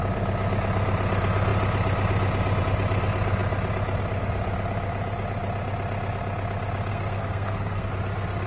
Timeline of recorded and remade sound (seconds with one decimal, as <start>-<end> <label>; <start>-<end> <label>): 0.0-6.9 recorded; 6.9-7.9 remade; 7.9-8.5 recorded